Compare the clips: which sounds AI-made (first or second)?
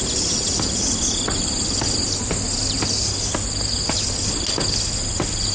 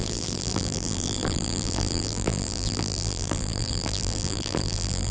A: second